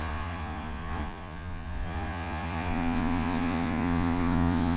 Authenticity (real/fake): fake